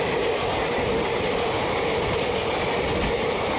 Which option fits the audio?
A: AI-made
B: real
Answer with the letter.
B